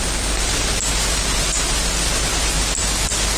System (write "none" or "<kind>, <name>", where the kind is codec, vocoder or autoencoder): none